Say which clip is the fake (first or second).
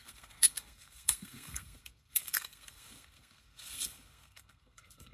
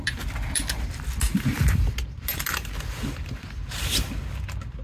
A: first